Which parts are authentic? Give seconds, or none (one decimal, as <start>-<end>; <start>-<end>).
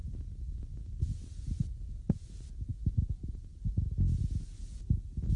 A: 0.0-5.4